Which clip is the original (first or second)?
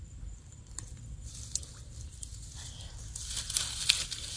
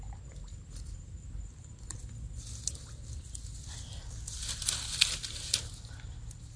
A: second